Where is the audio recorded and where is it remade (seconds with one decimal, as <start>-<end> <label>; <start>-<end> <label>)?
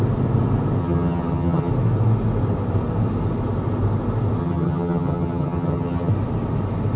0.0-0.8 recorded; 0.8-1.7 remade; 1.7-4.4 recorded; 4.4-6.1 remade; 6.1-7.0 recorded